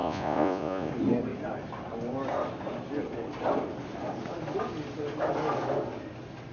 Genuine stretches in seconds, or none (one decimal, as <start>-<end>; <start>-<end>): 0.9-6.5